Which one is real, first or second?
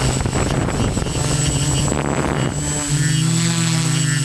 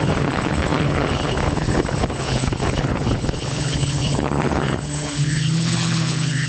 first